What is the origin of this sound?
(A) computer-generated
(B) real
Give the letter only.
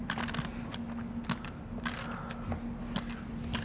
B